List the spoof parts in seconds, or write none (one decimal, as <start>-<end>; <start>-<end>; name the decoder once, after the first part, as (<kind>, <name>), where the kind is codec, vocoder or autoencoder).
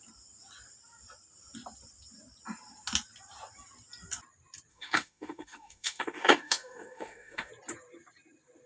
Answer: 4.7-7.5 (autoencoder, DAC-VAE)